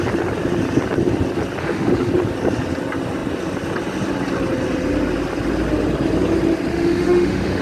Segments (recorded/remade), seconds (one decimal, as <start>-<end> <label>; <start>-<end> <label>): 0.0-1.6 recorded; 1.6-2.1 remade; 2.1-6.7 recorded; 6.7-7.6 remade